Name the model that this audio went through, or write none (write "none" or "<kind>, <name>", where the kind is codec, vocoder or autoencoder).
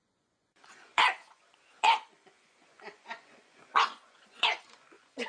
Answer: vocoder, Vocos